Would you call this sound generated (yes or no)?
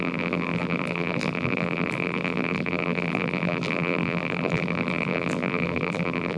yes